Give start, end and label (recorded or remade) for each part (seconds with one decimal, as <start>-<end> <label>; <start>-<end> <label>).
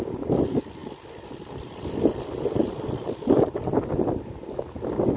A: 0.0-5.2 recorded